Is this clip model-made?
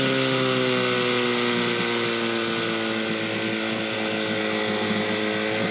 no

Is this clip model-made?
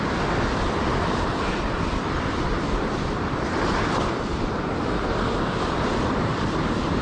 yes